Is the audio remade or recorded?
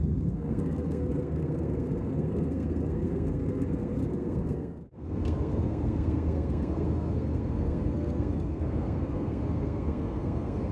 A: remade